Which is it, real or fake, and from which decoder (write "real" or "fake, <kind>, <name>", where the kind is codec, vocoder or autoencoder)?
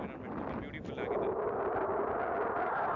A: real